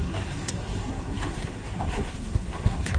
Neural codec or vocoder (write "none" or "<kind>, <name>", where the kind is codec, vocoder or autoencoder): codec, SNAC